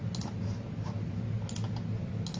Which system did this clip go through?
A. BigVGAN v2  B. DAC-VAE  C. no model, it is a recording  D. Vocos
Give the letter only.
C